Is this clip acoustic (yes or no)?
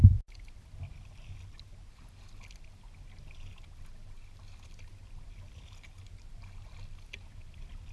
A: yes